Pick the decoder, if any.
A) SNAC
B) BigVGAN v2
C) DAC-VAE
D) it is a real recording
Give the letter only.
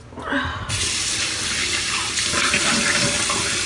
D